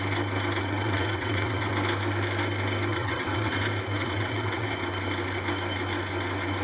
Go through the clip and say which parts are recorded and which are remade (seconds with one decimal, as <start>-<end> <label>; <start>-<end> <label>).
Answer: 0.0-0.6 recorded; 0.6-1.7 remade; 1.7-2.9 recorded; 2.9-3.5 remade; 3.5-4.0 recorded; 4.0-4.7 remade; 4.7-6.6 recorded